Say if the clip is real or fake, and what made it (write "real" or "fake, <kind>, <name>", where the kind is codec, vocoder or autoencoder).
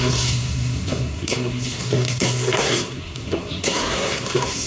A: fake, codec, SNAC